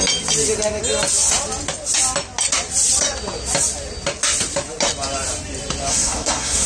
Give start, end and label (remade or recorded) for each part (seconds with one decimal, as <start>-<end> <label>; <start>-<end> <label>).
0.0-5.9 recorded; 5.9-6.7 remade